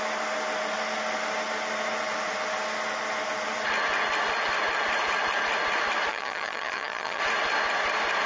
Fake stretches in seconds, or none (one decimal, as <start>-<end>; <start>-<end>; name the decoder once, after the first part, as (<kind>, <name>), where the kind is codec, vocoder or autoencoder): 6.1-7.2 (vocoder, HiFi-GAN)